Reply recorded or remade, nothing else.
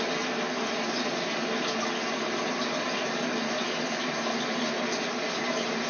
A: recorded